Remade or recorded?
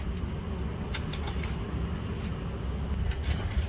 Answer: recorded